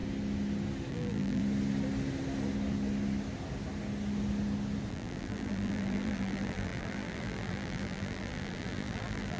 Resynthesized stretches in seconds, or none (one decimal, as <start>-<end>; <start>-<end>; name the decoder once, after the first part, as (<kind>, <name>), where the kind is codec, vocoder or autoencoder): 0.9-1.4 (vocoder, BigVGAN v2); 4.9-9.4